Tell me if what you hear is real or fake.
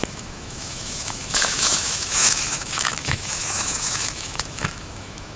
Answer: fake